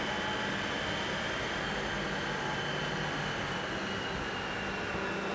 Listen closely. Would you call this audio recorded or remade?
recorded